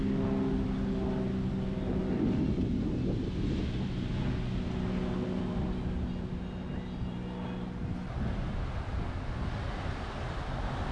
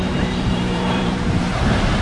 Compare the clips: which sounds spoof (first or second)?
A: second